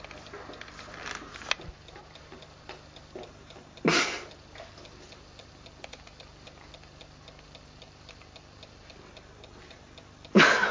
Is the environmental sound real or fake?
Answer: real